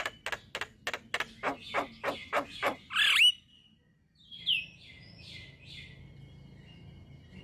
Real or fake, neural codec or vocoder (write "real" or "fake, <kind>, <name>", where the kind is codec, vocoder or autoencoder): real